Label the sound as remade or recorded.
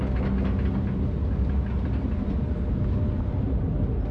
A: recorded